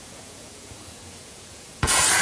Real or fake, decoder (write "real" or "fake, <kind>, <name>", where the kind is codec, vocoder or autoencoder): fake, vocoder, Vocos